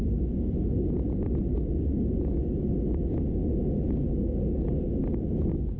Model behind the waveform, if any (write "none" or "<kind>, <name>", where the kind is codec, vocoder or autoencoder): none